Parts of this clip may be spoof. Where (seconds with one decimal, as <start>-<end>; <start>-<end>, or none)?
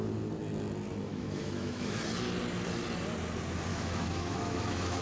1.1-2.0; 3.7-5.0